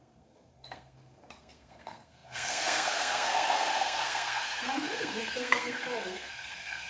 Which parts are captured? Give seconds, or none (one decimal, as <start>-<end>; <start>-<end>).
none